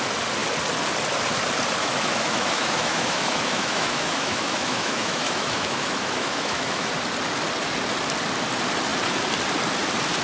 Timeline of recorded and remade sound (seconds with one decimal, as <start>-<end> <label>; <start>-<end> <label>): 0.0-1.8 recorded; 1.8-6.9 remade; 6.9-10.2 recorded